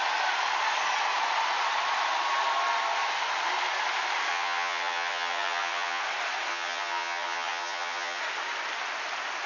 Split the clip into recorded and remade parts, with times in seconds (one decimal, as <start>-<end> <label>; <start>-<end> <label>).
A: 0.0-4.3 recorded; 4.3-6.0 remade; 6.0-6.5 recorded; 6.5-8.2 remade; 8.2-9.5 recorded